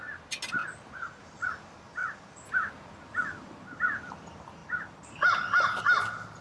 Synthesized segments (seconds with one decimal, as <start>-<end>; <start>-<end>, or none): none